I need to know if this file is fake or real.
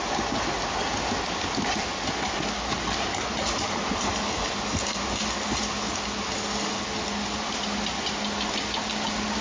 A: real